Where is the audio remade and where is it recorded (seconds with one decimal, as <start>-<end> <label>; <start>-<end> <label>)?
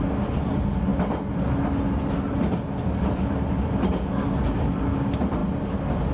0.0-6.1 recorded